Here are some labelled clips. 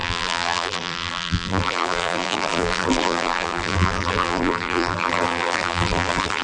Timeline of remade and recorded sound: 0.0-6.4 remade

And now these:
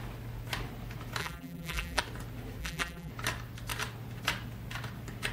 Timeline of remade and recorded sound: 0.0-1.2 recorded; 1.2-2.0 remade; 2.0-2.6 recorded; 2.6-3.1 remade; 3.1-5.3 recorded